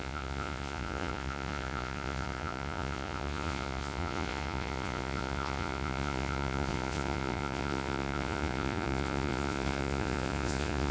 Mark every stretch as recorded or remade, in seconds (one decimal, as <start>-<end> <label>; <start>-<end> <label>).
0.0-10.9 remade